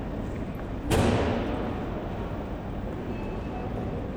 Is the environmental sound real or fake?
real